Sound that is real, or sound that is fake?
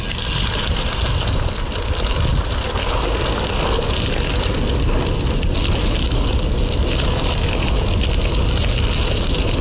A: real